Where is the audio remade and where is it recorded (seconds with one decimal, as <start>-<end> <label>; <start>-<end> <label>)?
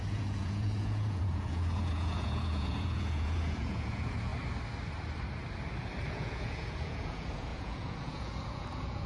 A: 0.0-4.3 remade; 4.3-6.0 recorded; 6.0-9.1 remade